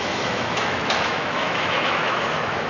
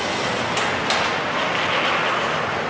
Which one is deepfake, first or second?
first